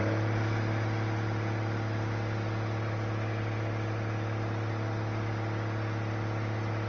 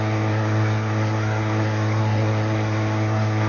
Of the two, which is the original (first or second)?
first